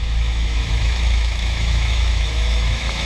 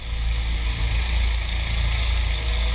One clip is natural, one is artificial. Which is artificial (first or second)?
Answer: first